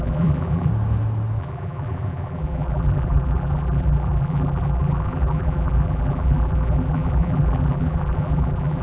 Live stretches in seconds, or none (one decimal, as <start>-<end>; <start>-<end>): 0.7-1.4